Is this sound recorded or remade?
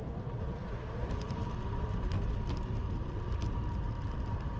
recorded